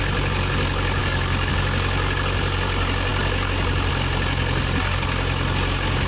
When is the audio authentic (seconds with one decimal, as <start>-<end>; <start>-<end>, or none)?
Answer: 0.0-1.0; 1.5-6.1